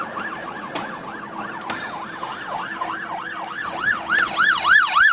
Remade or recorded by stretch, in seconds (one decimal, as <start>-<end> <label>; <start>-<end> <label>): 0.0-0.4 recorded; 0.4-0.9 remade; 0.9-5.1 recorded